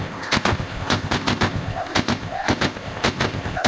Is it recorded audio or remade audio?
remade